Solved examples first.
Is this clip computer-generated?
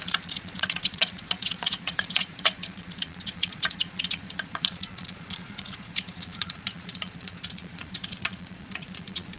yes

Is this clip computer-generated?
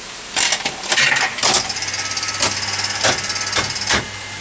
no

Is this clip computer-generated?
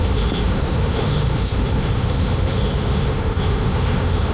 yes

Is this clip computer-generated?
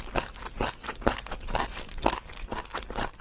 no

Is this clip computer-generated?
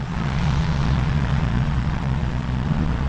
yes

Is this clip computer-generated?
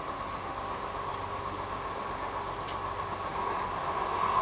no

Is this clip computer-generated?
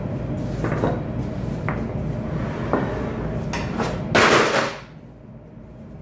no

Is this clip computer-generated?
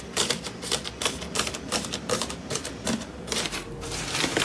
no